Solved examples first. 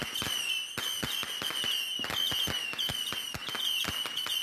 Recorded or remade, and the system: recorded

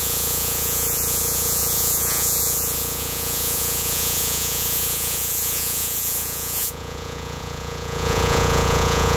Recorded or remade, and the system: remade, vocoder, Vocos